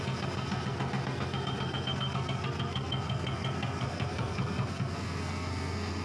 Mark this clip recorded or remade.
remade